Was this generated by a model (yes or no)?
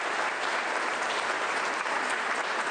yes